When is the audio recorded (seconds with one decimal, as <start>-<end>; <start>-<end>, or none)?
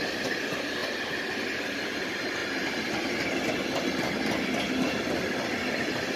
0.0-6.2